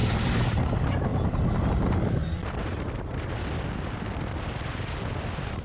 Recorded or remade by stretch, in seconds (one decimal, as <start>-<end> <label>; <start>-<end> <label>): 0.0-5.6 remade